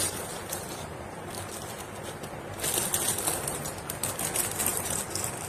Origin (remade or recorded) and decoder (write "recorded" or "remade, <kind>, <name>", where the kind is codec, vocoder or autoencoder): recorded